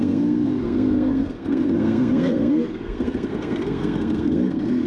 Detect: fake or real fake